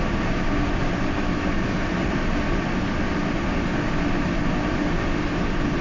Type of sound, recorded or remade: recorded